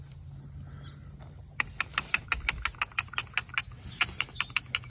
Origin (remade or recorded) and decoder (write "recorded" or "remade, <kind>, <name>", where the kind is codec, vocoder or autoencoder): recorded